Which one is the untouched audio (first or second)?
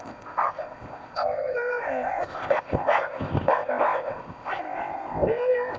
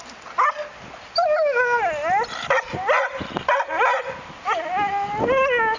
second